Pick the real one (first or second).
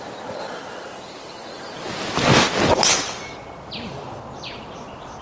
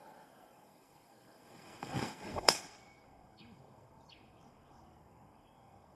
first